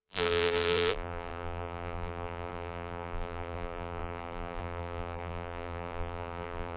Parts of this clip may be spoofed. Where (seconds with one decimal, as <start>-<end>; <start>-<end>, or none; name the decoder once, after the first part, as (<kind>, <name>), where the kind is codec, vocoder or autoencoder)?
0.0-6.8 (vocoder, BigVGAN v2)